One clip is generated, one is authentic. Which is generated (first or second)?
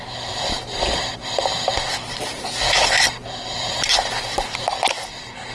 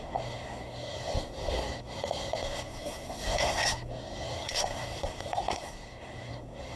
second